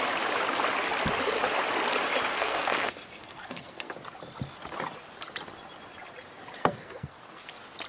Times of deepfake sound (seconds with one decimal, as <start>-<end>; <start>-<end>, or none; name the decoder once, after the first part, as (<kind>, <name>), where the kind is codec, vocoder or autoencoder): 2.3-3.9 (codec, SNAC); 6.6-7.5